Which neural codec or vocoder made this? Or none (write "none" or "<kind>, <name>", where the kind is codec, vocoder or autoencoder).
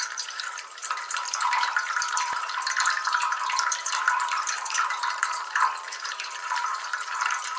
vocoder, BigVGAN v2